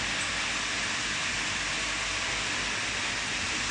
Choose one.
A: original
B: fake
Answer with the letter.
A